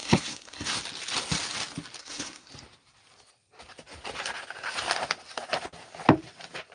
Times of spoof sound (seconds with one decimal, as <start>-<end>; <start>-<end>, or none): 0.0-0.8; 2.0-2.5